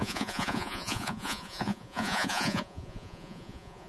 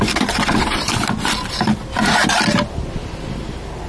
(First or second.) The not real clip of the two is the first